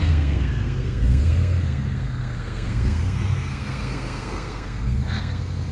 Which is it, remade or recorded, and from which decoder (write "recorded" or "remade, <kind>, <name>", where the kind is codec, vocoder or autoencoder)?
remade, codec, SNAC